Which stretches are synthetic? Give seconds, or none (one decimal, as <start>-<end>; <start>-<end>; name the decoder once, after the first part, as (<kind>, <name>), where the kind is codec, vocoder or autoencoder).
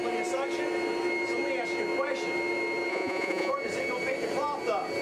2.9-3.5 (vocoder, Vocos)